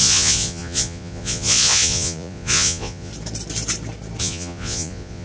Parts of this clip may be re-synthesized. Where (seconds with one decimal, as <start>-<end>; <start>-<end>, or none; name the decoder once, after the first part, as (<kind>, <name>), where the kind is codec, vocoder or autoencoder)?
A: 0.0-3.1 (vocoder, Vocos); 4.2-5.2